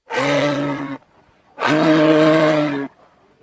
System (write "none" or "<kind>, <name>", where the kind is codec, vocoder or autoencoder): vocoder, Vocos